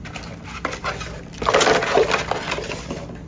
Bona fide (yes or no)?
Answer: yes